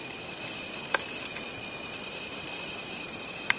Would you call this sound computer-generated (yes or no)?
no